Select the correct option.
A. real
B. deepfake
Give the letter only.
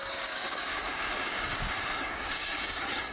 B